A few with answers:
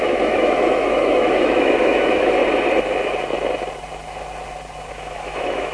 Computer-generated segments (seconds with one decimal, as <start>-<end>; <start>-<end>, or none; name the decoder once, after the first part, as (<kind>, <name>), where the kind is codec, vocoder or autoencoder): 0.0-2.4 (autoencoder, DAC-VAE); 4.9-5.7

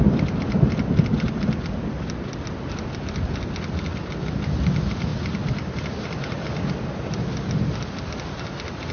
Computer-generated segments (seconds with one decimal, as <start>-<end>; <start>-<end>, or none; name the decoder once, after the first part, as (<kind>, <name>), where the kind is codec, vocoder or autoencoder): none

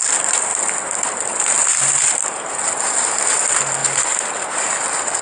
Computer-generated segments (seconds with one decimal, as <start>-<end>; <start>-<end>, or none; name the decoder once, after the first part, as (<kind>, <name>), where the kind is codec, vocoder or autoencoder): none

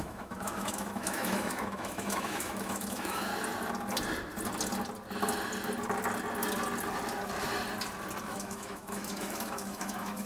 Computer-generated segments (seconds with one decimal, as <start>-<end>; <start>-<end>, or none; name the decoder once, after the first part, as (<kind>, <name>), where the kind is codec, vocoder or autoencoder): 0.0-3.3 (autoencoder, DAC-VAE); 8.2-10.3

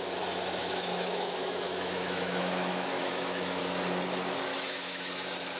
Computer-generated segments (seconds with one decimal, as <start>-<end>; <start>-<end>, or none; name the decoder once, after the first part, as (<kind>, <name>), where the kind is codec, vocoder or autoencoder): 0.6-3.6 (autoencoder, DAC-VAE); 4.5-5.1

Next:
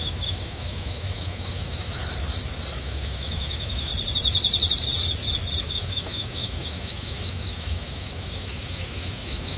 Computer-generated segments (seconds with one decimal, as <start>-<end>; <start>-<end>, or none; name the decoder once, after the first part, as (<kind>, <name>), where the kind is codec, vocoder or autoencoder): 0.0-2.0 (autoencoder, DAC-VAE); 2.8-3.9; 5.6-9.6

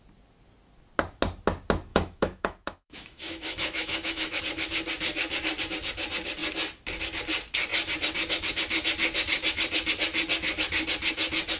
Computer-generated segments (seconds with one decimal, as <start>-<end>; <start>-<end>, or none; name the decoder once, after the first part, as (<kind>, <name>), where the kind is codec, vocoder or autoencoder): 1.9-4.4 (autoencoder, DAC-VAE)

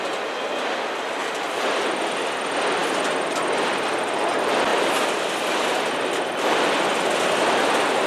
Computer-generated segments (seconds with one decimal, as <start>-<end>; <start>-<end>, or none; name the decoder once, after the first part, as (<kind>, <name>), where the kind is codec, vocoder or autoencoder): none